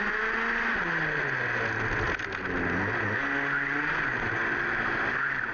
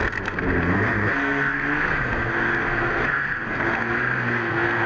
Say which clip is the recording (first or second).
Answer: first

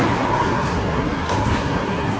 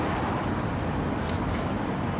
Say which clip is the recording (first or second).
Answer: second